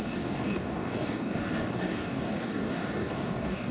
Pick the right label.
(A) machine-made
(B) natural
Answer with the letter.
A